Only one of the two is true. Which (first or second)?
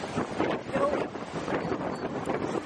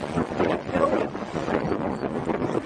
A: first